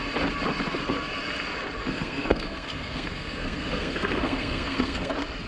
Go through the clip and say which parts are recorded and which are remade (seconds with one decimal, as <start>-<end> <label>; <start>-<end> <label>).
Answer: 0.0-1.8 recorded; 1.8-5.1 remade; 5.1-5.5 recorded